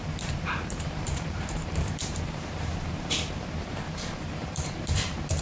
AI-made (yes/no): yes